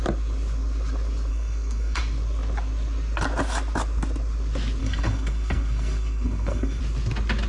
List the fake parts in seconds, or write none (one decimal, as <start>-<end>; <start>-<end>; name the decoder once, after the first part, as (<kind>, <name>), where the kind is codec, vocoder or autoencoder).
1.3-2.0 (codec, SNAC); 4.8-6.8